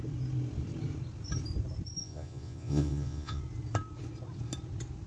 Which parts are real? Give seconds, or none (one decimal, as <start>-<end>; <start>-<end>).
0.0-2.0; 3.4-5.1